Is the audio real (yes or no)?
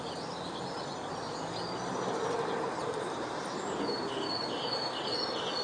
yes